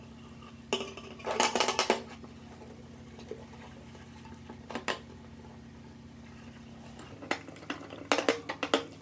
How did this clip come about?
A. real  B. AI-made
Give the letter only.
A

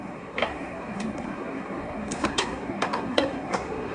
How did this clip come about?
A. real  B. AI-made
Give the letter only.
B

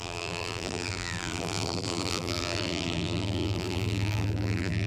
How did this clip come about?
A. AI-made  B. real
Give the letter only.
A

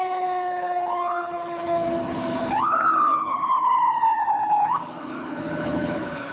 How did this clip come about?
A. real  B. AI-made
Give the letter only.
B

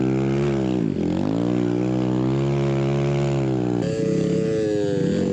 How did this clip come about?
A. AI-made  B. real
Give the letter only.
B